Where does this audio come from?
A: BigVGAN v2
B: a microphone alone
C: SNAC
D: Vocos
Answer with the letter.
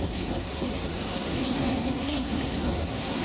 C